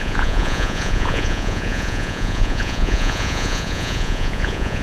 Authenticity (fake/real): fake